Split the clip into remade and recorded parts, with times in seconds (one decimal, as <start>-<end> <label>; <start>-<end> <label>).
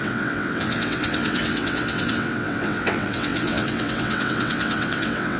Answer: 0.0-5.4 remade